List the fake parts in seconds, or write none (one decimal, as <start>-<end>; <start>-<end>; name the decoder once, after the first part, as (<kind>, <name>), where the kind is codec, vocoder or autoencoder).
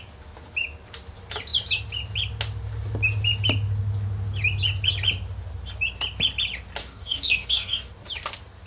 6.8-7.9 (codec, DAC)